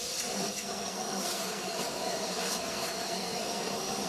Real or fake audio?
fake